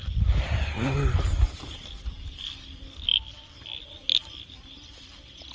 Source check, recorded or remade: recorded